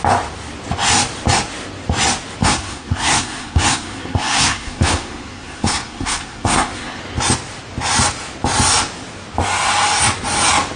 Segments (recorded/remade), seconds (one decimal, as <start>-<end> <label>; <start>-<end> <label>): 0.0-2.4 recorded; 2.4-7.0 remade; 7.0-10.8 recorded